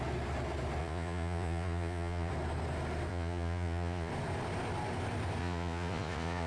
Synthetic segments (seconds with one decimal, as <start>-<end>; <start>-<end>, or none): 0.8-2.3; 3.1-4.1; 5.4-6.5